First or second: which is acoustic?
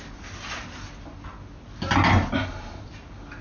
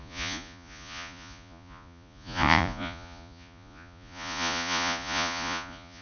first